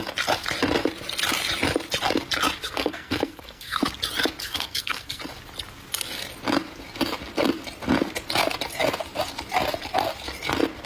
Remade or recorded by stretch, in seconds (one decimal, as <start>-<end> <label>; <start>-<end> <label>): 0.0-2.6 recorded; 2.6-3.8 remade; 3.8-4.4 recorded; 4.4-5.2 remade; 5.2-10.9 recorded